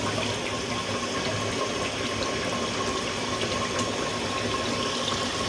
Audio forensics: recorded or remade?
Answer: recorded